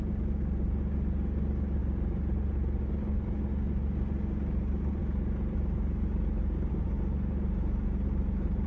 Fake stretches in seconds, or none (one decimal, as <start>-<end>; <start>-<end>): none